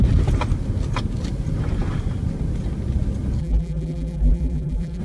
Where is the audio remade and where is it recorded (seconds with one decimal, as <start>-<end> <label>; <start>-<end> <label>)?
0.0-3.4 recorded; 3.4-5.0 remade